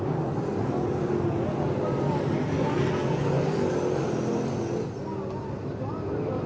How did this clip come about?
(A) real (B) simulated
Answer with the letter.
A